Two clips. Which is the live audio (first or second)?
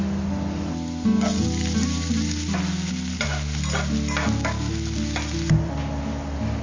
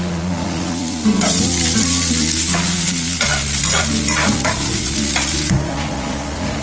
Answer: first